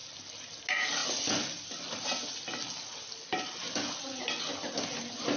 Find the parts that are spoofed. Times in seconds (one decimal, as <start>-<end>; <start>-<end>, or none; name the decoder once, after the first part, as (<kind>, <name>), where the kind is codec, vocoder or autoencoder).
none